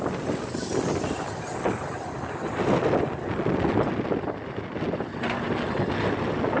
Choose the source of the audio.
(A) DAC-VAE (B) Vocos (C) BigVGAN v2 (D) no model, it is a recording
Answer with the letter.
D